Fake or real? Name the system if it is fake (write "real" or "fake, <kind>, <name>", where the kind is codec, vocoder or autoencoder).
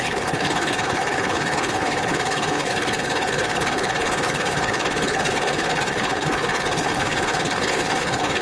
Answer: fake, codec, HILCodec